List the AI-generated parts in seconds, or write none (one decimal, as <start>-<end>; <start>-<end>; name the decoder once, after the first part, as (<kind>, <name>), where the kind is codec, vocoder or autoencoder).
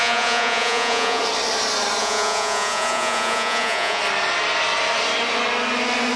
0.0-1.2 (vocoder, Vocos); 2.0-4.0